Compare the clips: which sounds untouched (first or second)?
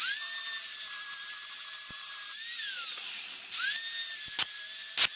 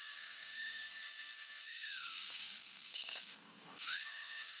first